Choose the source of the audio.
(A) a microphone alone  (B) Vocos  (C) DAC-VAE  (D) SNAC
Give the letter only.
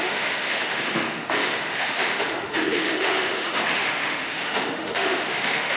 C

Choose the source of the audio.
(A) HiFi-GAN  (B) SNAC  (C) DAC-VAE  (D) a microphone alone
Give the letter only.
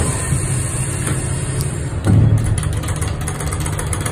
D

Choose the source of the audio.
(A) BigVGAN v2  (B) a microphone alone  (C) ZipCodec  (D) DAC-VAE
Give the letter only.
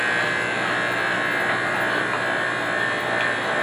B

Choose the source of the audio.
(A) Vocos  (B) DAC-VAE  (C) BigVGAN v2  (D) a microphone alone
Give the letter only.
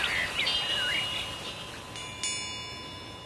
D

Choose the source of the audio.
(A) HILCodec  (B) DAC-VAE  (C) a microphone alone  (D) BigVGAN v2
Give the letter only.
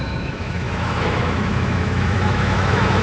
B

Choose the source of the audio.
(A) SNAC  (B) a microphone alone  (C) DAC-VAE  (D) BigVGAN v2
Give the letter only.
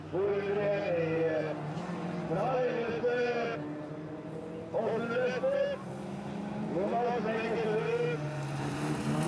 B